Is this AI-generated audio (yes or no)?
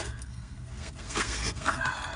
yes